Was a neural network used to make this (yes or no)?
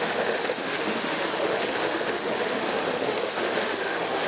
yes